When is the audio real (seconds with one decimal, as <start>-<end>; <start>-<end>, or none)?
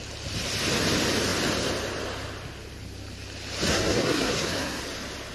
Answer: 0.0-3.7; 4.8-5.3